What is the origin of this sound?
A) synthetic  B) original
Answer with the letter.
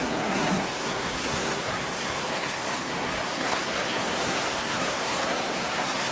A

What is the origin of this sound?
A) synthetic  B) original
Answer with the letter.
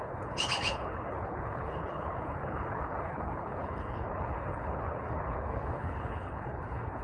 A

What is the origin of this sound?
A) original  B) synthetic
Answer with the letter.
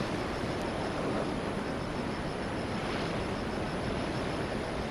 A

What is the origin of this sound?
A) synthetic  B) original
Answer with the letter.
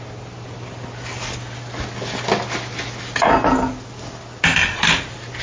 B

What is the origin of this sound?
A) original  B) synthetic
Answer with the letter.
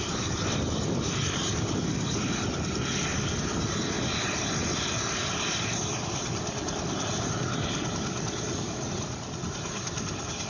A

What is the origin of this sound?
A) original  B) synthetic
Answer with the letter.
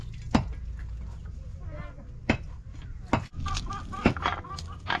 A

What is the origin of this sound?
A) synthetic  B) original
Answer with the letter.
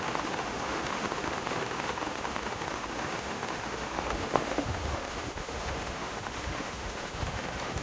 A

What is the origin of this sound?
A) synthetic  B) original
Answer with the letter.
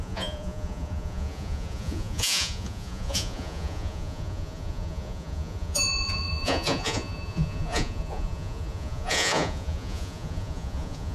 A